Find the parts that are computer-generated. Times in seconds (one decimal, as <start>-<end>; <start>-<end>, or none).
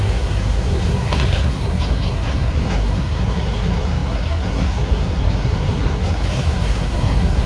0.0-7.5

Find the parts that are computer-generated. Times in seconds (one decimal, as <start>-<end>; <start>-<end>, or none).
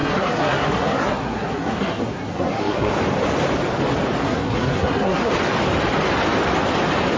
0.0-2.9; 4.2-5.3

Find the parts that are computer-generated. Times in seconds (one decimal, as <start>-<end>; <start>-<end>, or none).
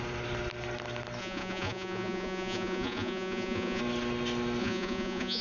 1.2-3.8; 4.6-5.4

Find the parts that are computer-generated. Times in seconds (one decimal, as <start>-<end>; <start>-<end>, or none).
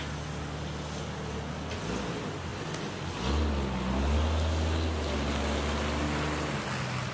none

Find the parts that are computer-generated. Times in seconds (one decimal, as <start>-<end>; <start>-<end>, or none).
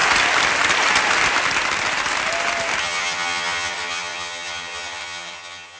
2.8-5.8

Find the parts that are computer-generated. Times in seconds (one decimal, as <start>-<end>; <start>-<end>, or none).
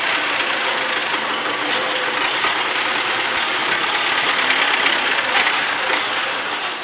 none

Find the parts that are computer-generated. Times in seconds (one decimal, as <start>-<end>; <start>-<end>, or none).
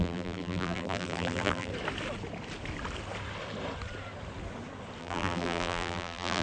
0.0-1.7; 5.0-6.4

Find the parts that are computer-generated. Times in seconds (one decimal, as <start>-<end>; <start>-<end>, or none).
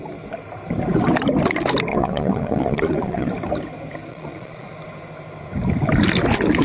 1.9-3.3; 4.1-4.7